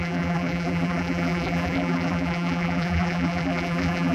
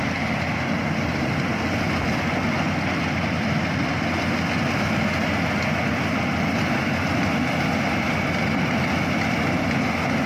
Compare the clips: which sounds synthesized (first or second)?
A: first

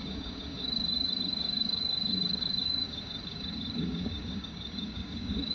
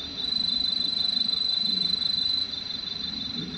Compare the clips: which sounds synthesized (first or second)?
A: first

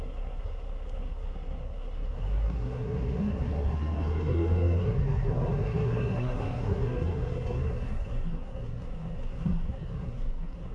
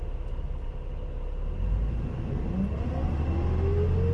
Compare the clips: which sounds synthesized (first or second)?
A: first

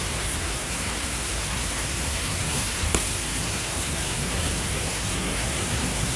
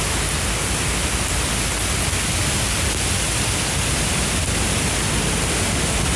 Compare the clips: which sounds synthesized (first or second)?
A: first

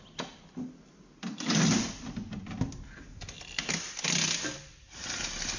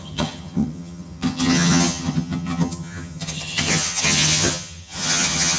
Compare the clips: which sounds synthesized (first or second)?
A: second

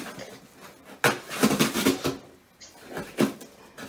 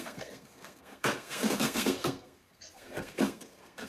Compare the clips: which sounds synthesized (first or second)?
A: second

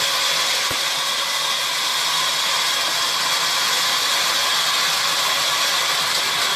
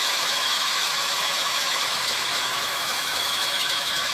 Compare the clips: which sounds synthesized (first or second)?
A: second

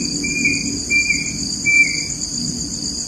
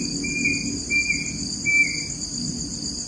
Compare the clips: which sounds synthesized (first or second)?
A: first